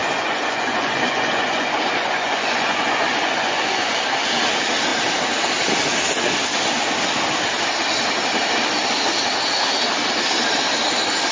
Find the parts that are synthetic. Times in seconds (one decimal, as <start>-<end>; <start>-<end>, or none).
0.0-4.0